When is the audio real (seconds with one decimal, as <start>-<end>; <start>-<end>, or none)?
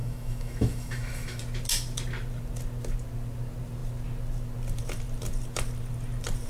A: 1.4-6.5